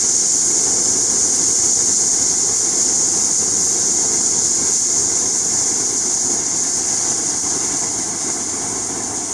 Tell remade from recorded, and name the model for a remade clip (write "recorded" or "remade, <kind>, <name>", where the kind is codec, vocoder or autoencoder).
recorded